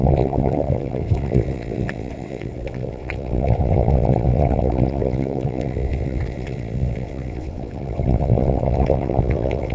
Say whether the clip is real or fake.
fake